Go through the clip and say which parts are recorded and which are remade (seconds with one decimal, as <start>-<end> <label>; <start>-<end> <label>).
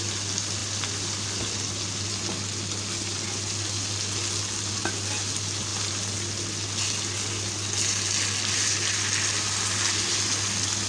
0.0-10.9 recorded